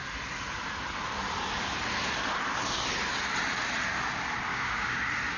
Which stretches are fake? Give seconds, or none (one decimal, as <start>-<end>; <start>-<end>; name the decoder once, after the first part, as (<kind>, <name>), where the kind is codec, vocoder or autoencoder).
4.5-5.0 (codec, DAC)